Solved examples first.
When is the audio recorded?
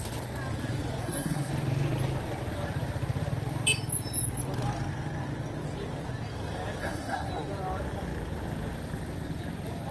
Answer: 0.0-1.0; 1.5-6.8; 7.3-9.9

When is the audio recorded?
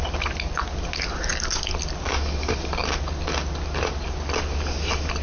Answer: 0.0-5.2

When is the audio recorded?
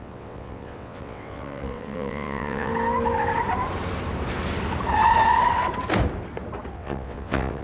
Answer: 2.7-6.7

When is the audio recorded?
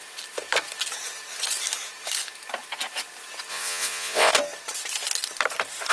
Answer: 0.0-3.5; 4.3-5.9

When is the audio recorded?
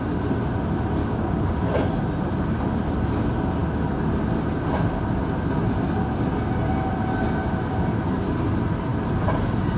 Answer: 0.0-1.0; 1.6-9.8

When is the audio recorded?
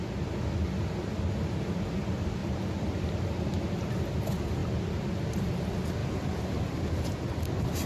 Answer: 0.0-2.4; 3.1-7.9